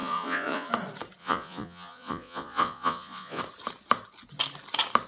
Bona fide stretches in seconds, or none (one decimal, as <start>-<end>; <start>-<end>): 0.7-1.2; 3.4-5.1